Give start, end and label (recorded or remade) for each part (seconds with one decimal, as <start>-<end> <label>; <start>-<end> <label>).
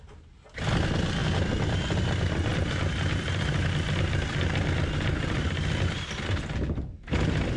0.0-7.6 recorded